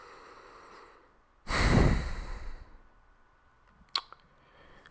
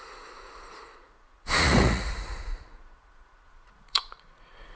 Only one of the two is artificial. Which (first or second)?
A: second